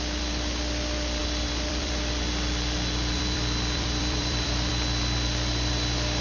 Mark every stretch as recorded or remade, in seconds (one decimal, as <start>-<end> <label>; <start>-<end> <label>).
0.0-1.2 recorded; 1.2-4.7 remade; 4.7-6.2 recorded